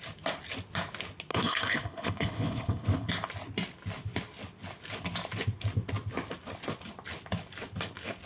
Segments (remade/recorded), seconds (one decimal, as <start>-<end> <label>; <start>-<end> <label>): 0.0-1.3 recorded; 1.3-3.1 remade; 3.1-8.3 recorded